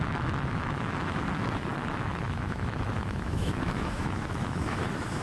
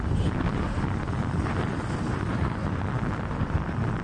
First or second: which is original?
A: second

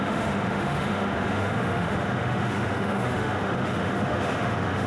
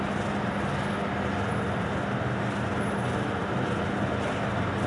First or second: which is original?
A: second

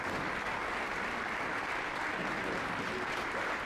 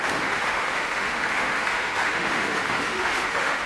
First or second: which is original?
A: first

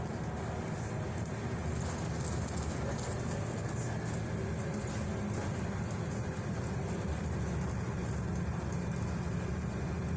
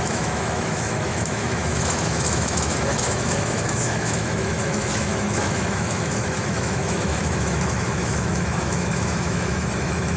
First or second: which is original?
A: first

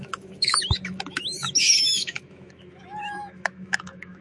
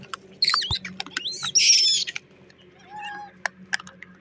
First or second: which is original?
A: second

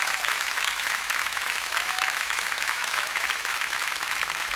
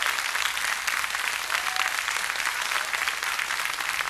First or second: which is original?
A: second